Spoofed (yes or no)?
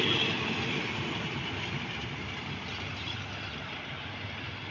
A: no